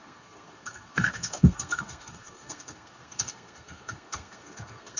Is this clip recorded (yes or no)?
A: no